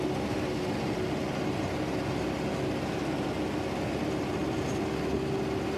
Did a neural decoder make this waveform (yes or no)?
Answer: no